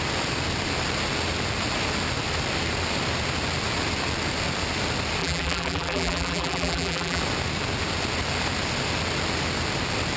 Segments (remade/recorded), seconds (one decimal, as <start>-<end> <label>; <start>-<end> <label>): 0.0-5.2 recorded; 5.2-7.2 remade; 7.2-10.2 recorded